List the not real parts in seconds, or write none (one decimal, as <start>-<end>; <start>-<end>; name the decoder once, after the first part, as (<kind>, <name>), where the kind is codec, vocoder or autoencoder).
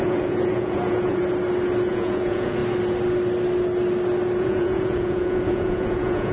0.0-1.2 (vocoder, Vocos); 1.9-2.6; 4.4-6.3